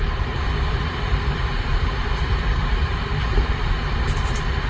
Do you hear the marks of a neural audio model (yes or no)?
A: yes